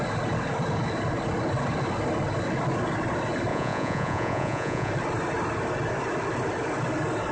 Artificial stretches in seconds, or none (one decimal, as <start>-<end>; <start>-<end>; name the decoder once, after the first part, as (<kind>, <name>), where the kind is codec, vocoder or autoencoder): 3.5-4.9 (vocoder, Vocos)